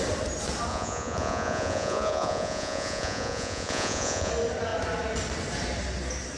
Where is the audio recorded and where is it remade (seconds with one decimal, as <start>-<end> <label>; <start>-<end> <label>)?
0.0-0.7 recorded; 0.7-4.3 remade; 4.3-6.4 recorded